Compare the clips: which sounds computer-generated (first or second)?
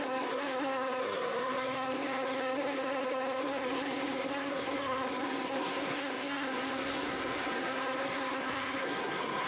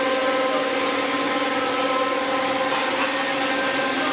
first